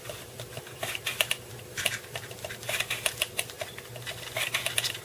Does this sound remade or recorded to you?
remade